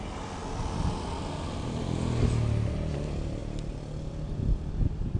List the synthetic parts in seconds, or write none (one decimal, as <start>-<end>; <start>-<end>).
none